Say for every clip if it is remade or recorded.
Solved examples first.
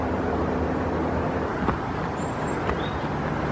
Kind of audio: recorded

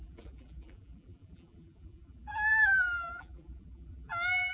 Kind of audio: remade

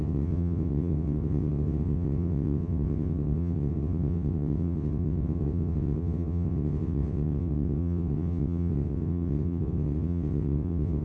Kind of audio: remade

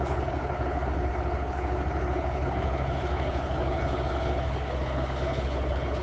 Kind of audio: remade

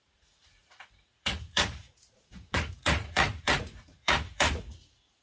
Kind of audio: remade